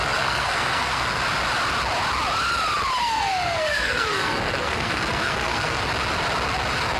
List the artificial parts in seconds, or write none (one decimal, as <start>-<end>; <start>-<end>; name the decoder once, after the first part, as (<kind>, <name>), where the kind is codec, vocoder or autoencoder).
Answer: 0.0-1.2 (codec, SNAC); 3.0-5.8

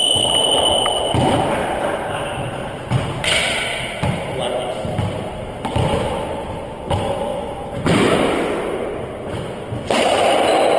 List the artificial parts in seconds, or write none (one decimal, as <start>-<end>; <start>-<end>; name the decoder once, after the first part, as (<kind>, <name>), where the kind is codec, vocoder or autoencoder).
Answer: none

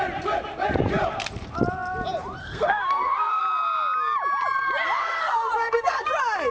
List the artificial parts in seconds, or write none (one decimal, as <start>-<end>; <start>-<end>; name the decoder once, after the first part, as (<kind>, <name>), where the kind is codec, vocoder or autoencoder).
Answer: 2.4-3.4 (codec, SNAC); 5.0-6.1

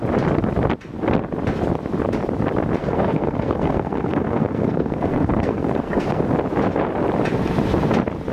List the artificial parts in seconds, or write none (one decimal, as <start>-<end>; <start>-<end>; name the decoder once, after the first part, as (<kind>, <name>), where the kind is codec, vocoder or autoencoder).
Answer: 2.8-6.2 (codec, SNAC)

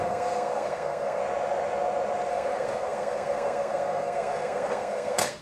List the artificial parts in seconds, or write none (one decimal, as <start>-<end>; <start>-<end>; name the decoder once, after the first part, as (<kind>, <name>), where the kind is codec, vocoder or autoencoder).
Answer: 0.0-1.2 (codec, SNAC); 2.3-5.4

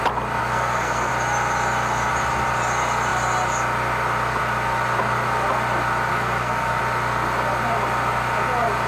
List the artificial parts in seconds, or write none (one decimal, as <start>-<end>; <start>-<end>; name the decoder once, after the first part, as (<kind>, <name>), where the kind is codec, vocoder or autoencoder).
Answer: 0.4-1.1 (codec, SNAC); 6.1-6.8